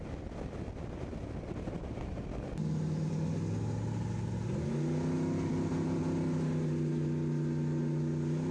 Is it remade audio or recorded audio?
recorded